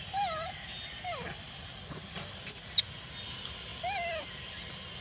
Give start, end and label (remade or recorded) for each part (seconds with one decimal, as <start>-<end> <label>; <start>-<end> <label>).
0.0-5.0 recorded